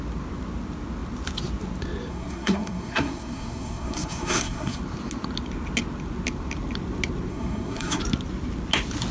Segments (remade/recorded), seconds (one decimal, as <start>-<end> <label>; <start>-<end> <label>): 0.0-2.1 recorded; 2.1-4.8 remade; 4.8-7.3 recorded; 7.3-8.0 remade; 8.0-9.1 recorded